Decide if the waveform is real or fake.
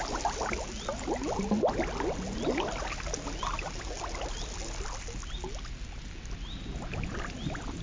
real